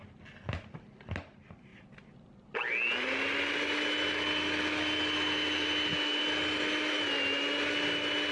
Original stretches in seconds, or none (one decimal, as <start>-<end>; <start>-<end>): 0.0-8.3